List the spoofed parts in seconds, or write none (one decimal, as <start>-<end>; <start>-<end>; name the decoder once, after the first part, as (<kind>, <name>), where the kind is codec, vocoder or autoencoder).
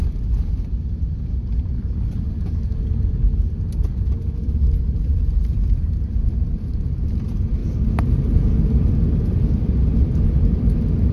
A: 0.0-7.6 (vocoder, BigVGAN v2); 8.2-11.1